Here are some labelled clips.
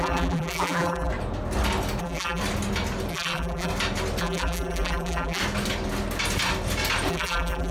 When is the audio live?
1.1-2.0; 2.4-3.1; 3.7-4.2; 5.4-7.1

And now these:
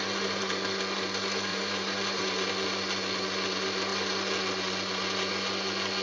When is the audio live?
0.0-1.5; 2.5-6.0

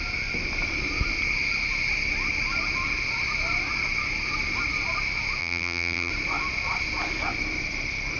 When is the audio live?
0.0-5.4; 6.1-8.2

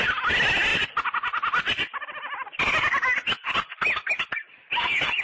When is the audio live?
0.0-5.2

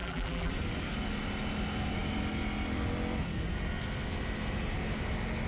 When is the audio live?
0.5-5.5